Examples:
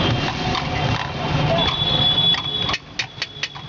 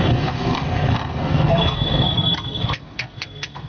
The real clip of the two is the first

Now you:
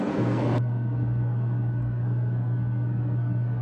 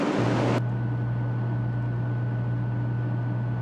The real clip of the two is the second